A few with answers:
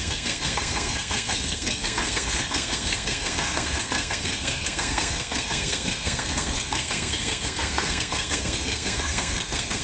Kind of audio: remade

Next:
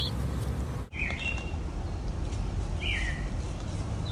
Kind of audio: remade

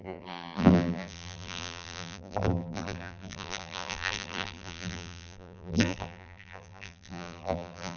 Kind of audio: remade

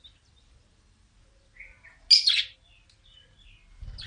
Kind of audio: recorded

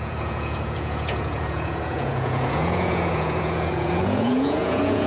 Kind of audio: remade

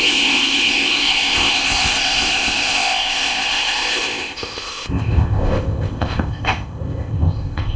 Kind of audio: remade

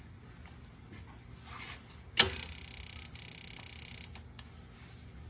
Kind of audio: recorded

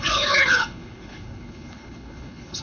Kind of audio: remade